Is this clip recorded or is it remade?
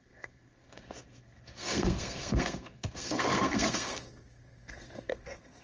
remade